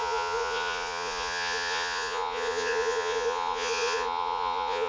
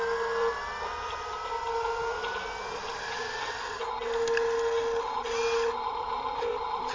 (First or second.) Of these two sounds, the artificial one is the first